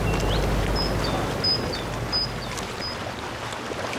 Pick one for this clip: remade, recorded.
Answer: recorded